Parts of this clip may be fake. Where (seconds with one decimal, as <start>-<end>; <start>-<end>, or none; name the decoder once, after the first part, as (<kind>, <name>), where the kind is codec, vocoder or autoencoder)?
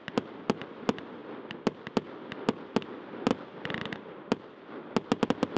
none